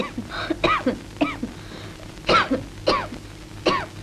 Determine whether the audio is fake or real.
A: real